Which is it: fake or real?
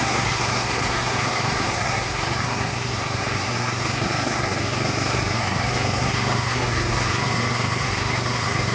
fake